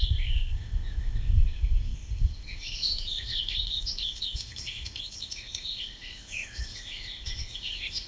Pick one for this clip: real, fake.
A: fake